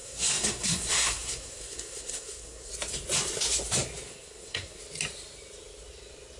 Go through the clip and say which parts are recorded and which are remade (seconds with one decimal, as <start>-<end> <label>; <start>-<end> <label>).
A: 0.0-2.7 remade; 2.7-4.1 recorded; 4.1-4.8 remade; 4.8-6.4 recorded